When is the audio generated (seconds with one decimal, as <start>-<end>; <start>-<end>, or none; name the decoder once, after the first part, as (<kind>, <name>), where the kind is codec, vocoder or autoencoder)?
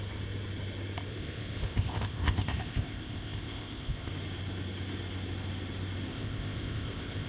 1.1-4.1 (codec, ZipCodec); 6.1-7.3